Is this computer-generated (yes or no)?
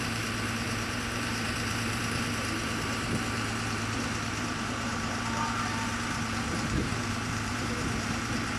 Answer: yes